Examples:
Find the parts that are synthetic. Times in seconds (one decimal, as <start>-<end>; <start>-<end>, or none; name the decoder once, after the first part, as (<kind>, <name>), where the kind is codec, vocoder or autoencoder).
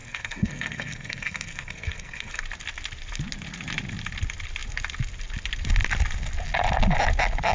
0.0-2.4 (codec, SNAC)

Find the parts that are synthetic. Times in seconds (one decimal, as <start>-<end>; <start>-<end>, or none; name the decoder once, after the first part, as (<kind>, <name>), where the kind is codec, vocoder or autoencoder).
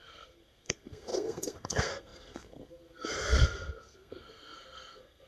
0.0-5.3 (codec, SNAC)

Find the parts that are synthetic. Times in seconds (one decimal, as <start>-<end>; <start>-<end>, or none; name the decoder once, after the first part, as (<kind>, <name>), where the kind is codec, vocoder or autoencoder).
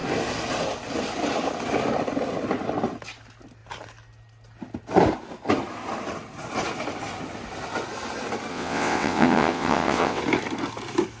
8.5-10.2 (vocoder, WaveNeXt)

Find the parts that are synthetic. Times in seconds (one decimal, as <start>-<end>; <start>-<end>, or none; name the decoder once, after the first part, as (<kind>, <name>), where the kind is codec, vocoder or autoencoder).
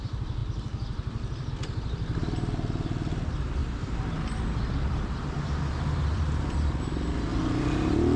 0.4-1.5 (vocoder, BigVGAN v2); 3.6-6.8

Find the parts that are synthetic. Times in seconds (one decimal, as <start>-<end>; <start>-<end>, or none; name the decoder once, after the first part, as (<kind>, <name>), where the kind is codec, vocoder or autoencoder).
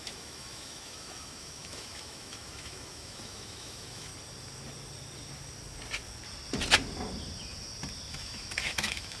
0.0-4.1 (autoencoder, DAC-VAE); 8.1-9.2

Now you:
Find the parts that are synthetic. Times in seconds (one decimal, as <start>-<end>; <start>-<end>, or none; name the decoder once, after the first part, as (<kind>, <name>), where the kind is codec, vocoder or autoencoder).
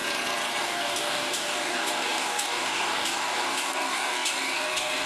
0.6-5.1 (codec, DAC)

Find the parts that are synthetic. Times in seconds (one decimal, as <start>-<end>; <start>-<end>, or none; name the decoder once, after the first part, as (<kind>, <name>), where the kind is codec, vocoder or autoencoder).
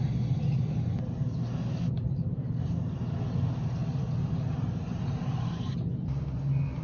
none